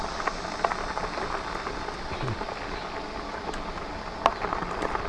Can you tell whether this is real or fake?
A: real